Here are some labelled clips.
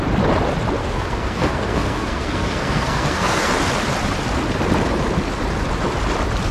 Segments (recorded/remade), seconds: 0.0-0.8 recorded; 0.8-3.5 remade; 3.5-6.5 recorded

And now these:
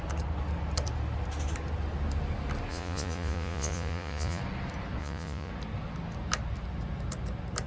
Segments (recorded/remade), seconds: 0.0-2.7 recorded; 2.7-4.4 remade; 4.4-5.0 recorded; 5.0-5.5 remade; 5.5-7.7 recorded

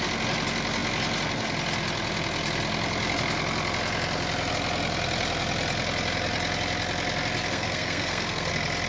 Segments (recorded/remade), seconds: 0.0-7.5 recorded; 7.5-8.5 remade; 8.5-8.9 recorded

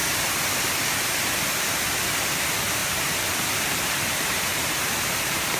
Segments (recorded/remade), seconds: 0.0-2.8 recorded; 2.8-5.6 remade

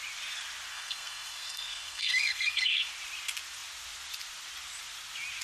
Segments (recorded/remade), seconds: 0.0-0.7 recorded; 0.7-2.9 remade; 2.9-5.4 recorded